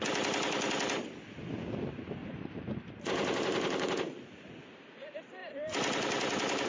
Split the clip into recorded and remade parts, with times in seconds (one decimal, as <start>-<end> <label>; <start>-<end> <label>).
0.0-2.2 recorded; 2.2-4.0 remade; 4.0-5.4 recorded; 5.4-6.7 remade